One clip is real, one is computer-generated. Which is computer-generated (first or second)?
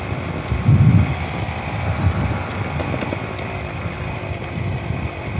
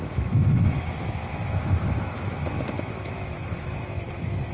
second